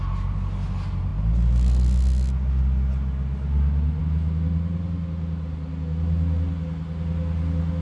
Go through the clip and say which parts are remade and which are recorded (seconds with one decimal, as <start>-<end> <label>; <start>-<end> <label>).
0.0-7.8 recorded